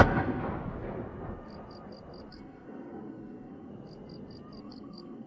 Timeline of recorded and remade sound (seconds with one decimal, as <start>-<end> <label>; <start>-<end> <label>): 0.0-0.4 remade; 0.4-2.3 recorded; 2.3-3.7 remade; 3.7-4.6 recorded; 4.6-5.3 remade